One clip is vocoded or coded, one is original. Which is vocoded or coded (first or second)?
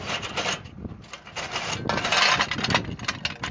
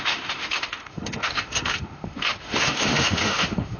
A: second